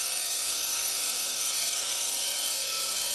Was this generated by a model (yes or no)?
yes